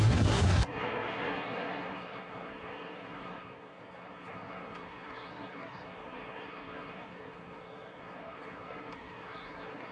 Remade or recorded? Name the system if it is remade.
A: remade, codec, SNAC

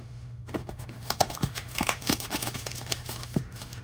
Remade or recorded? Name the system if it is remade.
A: remade, autoencoder, DAC-VAE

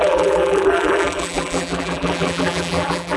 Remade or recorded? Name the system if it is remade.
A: remade, vocoder, BigVGAN v2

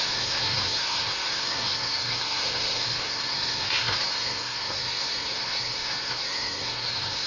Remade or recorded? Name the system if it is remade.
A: remade, codec, SNAC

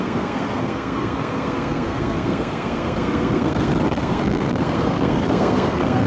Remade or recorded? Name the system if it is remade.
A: remade, codec, SNAC